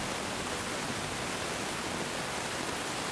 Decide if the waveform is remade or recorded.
recorded